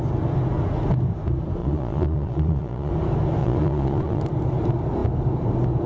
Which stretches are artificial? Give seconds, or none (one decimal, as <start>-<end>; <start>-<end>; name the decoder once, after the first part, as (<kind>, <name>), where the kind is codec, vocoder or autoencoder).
1.6-2.9 (vocoder, Vocos); 3.4-4.2